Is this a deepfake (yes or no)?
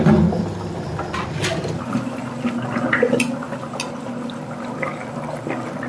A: no